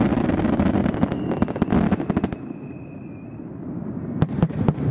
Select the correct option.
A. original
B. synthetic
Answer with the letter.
A